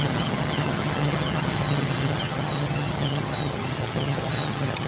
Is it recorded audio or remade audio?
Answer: remade